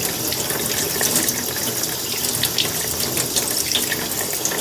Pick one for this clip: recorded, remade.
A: recorded